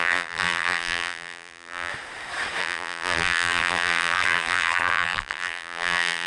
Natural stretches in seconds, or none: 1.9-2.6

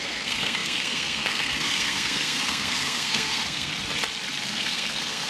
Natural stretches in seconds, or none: 3.7-4.4

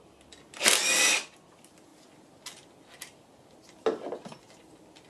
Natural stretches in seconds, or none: 1.9-5.1

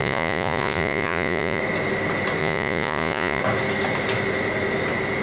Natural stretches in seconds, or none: 1.6-2.4; 3.4-5.2

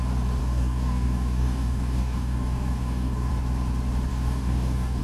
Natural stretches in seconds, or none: 0.0-0.4; 3.3-4.1

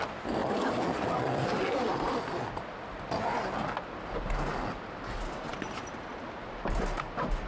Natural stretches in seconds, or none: 0.0-7.5

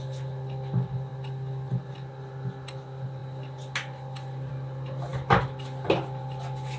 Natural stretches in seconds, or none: 0.0-6.8

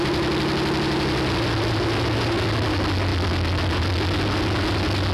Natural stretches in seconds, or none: 0.0-5.1